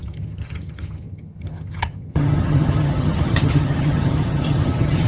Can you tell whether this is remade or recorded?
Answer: remade